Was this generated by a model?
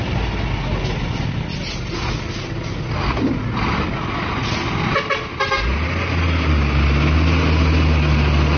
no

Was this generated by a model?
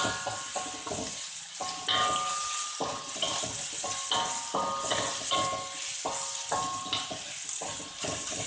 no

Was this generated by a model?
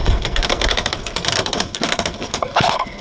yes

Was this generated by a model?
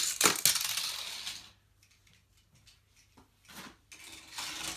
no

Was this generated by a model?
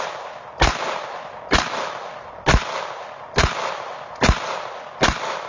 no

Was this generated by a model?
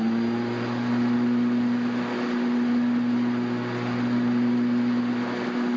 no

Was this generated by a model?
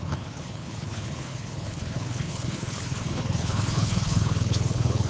yes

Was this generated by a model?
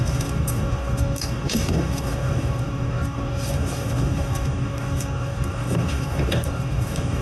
yes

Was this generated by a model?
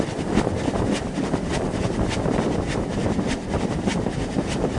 no